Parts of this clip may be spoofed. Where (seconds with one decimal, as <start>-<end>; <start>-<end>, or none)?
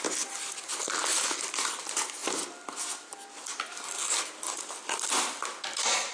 none